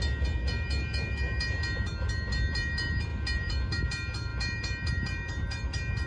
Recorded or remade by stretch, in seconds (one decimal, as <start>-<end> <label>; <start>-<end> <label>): 0.0-6.1 recorded